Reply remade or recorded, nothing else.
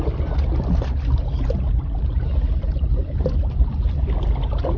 recorded